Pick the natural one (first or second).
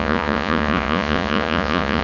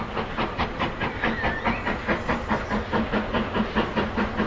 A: second